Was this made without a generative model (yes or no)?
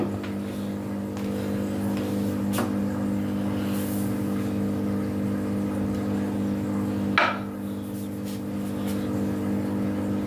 yes